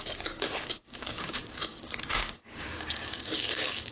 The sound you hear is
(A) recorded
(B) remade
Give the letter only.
B